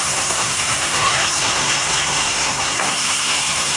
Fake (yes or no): yes